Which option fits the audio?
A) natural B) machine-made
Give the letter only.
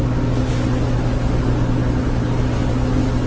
A